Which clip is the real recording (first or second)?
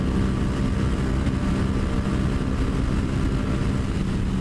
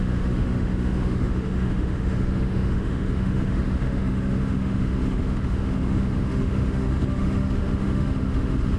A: first